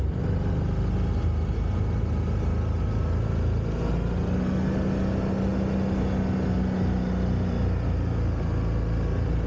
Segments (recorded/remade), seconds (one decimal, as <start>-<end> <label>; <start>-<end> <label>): 0.0-9.5 recorded